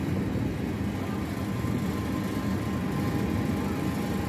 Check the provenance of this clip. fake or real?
real